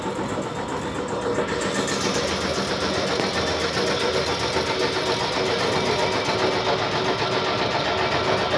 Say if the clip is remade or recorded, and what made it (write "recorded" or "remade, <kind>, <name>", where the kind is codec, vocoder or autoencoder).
recorded